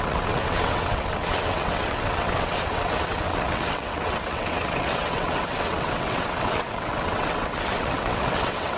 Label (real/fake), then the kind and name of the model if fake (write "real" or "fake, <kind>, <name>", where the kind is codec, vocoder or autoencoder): fake, vocoder, WaveNeXt